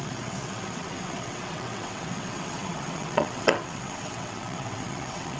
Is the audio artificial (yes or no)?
yes